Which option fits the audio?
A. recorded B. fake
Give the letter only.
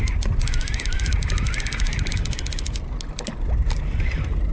A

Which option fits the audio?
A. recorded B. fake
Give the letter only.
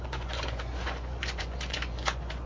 B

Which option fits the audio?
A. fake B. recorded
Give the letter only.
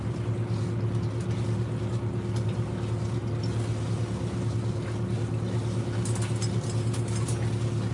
B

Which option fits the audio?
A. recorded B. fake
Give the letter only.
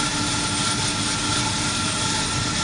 A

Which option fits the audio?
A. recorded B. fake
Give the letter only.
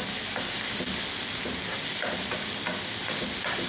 A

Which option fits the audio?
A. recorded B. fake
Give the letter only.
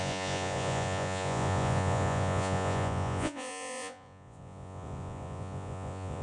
B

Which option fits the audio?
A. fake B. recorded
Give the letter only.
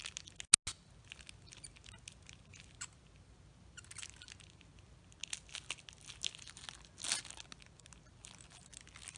B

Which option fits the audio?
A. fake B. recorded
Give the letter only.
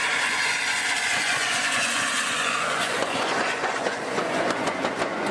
A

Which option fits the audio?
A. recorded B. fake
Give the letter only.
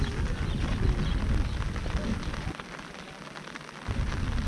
A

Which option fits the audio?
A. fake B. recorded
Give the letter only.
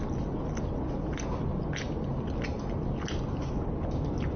B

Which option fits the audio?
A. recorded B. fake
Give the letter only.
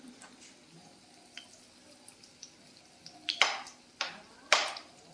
A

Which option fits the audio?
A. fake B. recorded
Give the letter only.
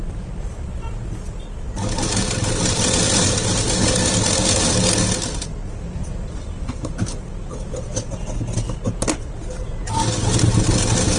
B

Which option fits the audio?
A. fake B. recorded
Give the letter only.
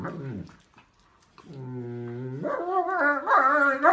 B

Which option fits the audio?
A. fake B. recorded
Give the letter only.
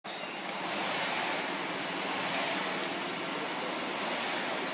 B